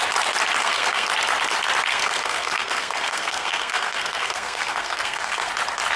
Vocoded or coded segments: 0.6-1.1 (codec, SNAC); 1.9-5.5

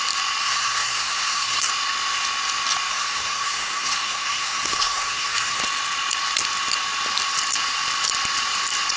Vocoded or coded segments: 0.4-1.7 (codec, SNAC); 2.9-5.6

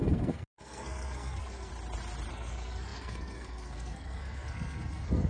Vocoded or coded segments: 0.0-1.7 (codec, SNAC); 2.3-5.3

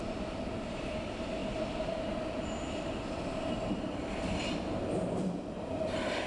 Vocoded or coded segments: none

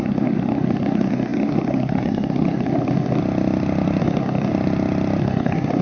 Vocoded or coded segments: 0.0-3.2 (codec, SNAC); 4.0-4.5; 5.2-5.8

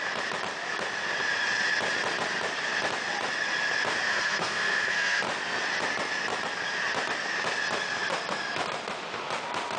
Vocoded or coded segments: 4.1-5.2 (codec, SNAC)